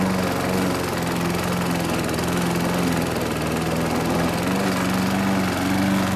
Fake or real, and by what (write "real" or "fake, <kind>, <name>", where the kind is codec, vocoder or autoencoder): real